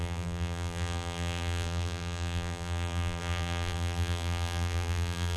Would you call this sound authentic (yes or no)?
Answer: no